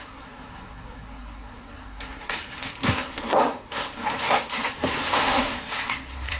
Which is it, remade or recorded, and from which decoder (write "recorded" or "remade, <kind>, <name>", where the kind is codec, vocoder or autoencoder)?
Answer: remade, codec, SNAC